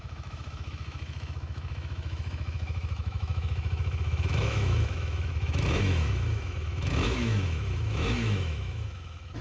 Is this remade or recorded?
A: remade